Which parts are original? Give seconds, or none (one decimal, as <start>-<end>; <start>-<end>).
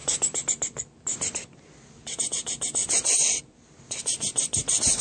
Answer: 0.0-5.0